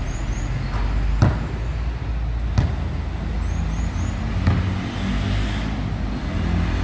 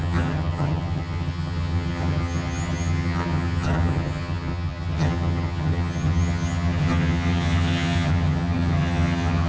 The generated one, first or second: second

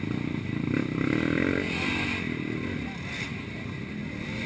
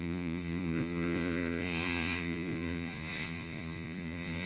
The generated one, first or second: second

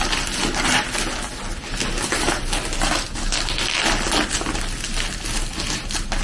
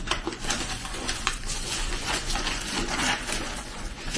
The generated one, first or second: second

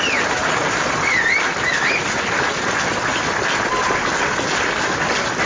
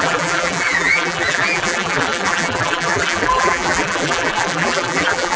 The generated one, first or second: second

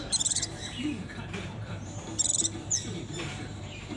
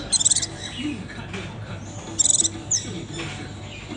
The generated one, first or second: first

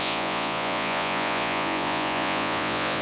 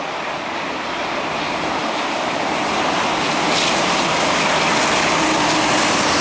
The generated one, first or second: first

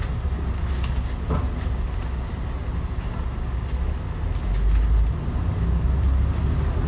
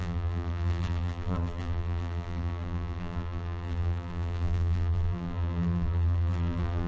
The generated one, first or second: second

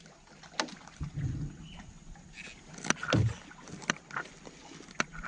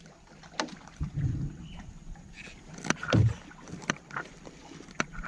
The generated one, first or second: second